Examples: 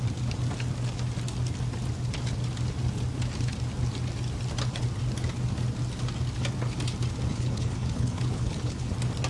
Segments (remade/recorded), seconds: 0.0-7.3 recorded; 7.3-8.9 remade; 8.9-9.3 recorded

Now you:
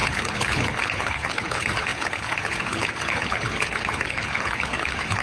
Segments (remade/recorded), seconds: 0.0-5.2 remade